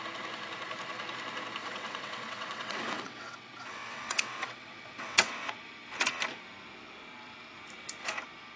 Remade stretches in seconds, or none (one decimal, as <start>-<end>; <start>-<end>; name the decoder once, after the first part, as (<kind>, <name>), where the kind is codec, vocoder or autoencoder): 1.6-5.5 (vocoder, WaveNeXt)